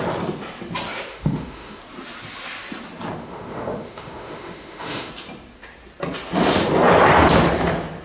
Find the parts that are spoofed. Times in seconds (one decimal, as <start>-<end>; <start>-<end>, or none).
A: 1.1-1.8; 3.2-5.1

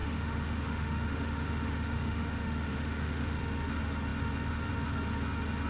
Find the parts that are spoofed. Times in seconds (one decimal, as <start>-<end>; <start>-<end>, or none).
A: 0.0-3.4

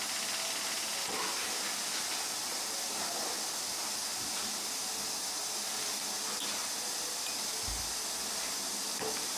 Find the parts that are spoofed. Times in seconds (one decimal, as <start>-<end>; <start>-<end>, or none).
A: none

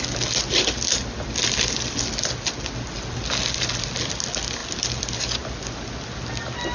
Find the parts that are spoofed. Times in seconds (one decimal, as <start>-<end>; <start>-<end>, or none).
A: none